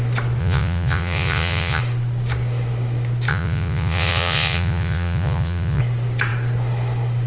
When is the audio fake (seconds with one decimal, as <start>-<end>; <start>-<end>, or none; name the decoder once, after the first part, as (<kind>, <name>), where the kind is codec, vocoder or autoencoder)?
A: 0.4-1.8 (vocoder, Vocos); 3.3-5.8